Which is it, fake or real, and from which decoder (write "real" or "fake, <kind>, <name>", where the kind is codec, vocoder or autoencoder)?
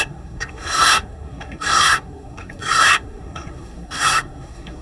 fake, codec, SNAC